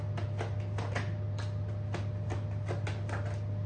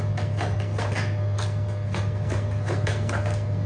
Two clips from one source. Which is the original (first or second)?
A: first